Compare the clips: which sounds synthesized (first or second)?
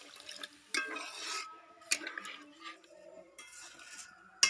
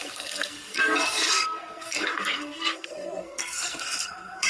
second